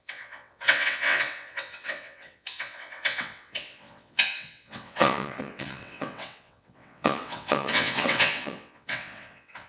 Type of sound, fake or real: fake